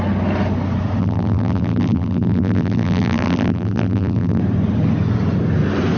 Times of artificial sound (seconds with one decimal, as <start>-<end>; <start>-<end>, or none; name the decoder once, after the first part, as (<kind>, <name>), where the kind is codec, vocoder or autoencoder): 1.0-4.4 (vocoder, BigVGAN v2)